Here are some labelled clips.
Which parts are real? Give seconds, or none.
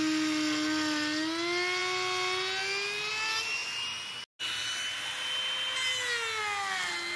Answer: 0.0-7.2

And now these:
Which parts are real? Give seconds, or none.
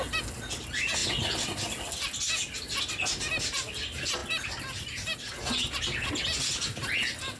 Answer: 0.0-7.4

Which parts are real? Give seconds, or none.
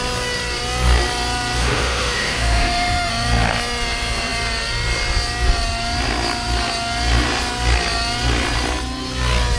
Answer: 0.0-1.6; 3.1-9.6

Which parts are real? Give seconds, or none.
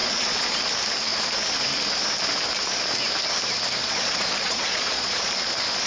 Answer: 0.6-3.8; 5.2-5.9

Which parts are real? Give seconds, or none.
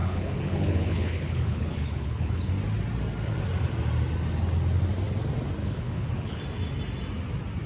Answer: 2.5-5.6; 6.4-7.7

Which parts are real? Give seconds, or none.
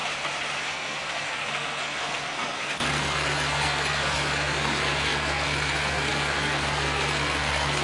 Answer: 0.0-0.6